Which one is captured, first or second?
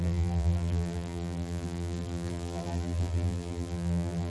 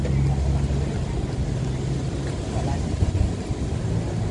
second